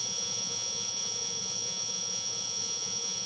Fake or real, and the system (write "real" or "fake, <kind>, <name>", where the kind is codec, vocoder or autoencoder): fake, vocoder, Vocos